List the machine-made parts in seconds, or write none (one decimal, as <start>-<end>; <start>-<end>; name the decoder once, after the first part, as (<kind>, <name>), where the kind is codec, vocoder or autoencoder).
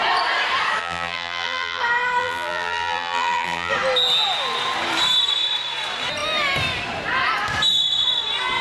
0.8-1.8 (vocoder, BigVGAN v2); 2.2-3.7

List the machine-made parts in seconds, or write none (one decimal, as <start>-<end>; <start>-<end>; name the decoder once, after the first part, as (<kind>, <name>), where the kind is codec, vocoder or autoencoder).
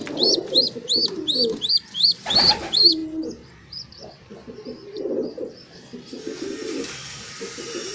1.7-3.0 (vocoder, BigVGAN v2); 3.5-7.9